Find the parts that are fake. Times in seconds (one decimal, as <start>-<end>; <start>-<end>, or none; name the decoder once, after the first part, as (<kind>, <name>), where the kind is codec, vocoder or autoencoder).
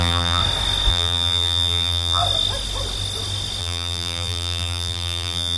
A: 0.0-0.4 (vocoder, BigVGAN v2); 0.9-2.2; 3.6-5.6